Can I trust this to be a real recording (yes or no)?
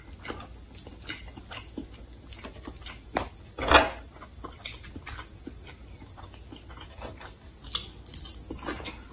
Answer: yes